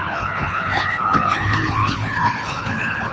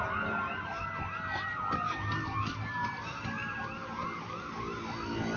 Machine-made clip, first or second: first